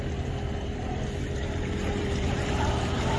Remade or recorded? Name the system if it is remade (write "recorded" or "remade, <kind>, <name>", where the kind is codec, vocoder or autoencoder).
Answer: recorded